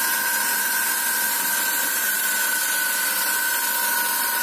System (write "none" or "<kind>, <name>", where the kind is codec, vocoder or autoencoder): none